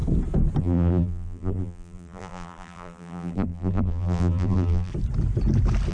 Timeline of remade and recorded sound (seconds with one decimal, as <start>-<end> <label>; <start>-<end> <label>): 0.0-0.6 recorded; 0.6-4.9 remade; 4.9-5.9 recorded